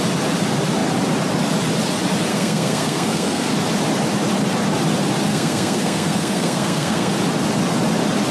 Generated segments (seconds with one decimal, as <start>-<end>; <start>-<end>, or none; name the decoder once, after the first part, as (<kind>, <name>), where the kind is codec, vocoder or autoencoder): 2.3-3.5 (codec, SNAC); 5.3-7.1